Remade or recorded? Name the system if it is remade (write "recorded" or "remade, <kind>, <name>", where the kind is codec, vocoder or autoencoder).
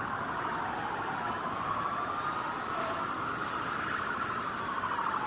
remade, vocoder, BigVGAN v2